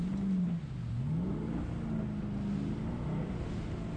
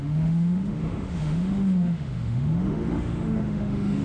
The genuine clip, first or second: first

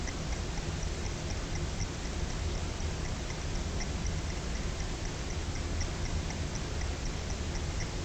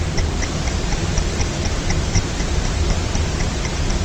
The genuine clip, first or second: first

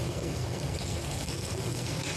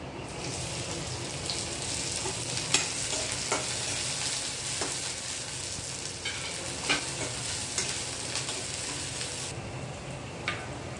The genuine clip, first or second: second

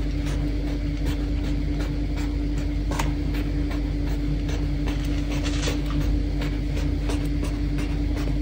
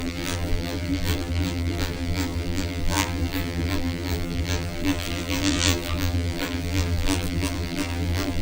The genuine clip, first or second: first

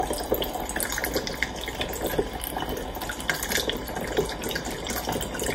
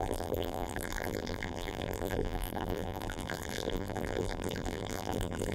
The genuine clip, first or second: first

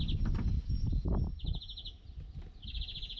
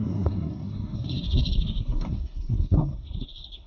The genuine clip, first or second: first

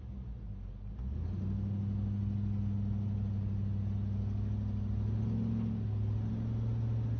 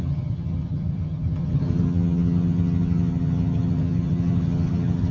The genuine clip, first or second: first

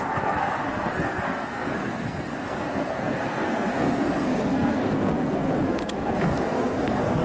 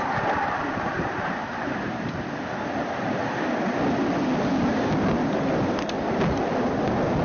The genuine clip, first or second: second